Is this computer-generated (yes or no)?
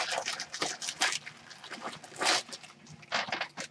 no